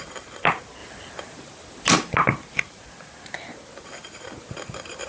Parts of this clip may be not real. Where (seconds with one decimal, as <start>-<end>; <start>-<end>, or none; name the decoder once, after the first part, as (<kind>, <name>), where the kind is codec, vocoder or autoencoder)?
none